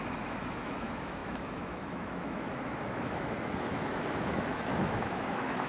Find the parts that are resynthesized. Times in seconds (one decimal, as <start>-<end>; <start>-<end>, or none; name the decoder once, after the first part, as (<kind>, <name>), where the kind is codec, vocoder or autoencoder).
0.0-5.7 (autoencoder, DAC-VAE)